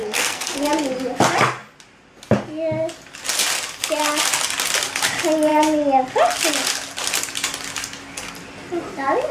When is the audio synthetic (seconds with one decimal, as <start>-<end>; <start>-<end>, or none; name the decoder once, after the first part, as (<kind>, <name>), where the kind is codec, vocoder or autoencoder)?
0.0-0.7 (codec, SNAC)